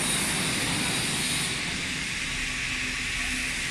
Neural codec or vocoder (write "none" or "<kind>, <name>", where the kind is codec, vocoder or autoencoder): none